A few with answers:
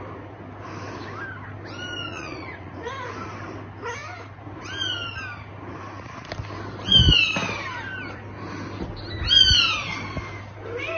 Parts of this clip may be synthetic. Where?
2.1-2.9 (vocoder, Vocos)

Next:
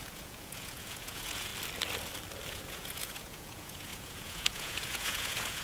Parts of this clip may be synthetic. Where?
0.0-1.5 (vocoder, Vocos); 2.5-5.6